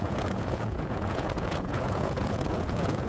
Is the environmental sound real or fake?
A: fake